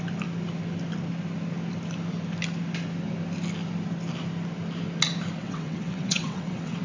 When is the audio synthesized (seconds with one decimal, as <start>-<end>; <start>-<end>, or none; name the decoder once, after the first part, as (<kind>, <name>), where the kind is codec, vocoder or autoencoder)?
5.4-6.8 (vocoder, WaveNeXt)